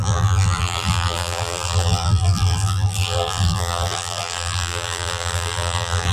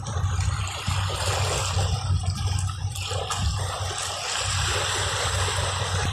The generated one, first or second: first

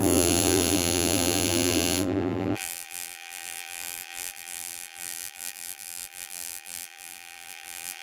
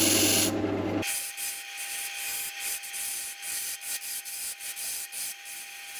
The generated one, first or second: first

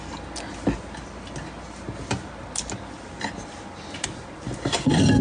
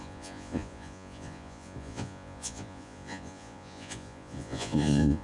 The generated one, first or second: second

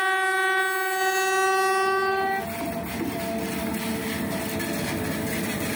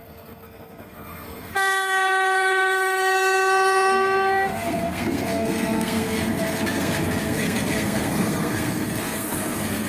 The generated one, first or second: second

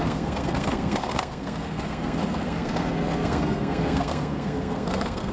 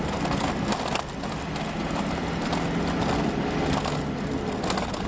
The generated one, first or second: first